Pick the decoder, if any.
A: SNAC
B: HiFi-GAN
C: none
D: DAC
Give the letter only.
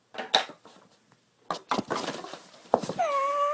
C